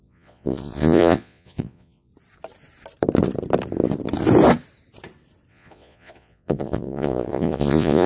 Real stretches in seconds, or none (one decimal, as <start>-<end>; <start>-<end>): 2.1-5.5